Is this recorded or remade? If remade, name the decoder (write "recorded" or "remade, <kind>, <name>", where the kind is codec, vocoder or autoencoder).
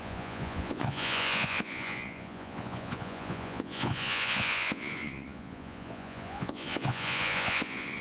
remade, vocoder, Vocos